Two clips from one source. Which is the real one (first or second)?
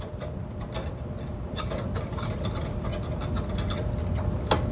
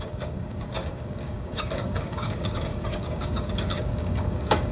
first